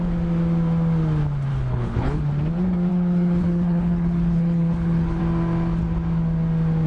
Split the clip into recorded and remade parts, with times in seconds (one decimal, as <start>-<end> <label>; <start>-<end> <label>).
0.0-1.5 recorded; 1.5-2.2 remade; 2.2-2.9 recorded; 2.9-5.2 remade; 5.2-6.9 recorded